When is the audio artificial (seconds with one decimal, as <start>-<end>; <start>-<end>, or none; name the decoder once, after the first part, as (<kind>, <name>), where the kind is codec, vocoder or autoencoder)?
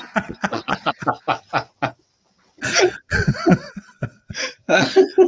0.0-1.0 (vocoder, Vocos); 2.8-5.3